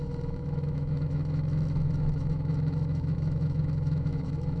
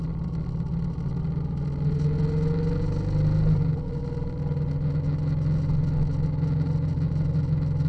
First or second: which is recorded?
second